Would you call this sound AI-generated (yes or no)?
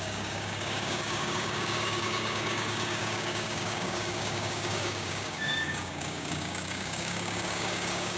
yes